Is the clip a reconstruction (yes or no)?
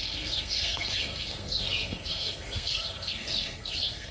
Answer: yes